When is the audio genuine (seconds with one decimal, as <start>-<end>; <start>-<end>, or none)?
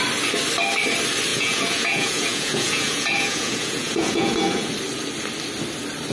0.0-1.3; 4.7-6.1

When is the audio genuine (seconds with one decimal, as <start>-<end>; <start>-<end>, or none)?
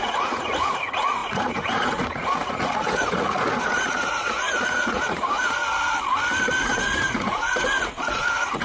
5.6-6.6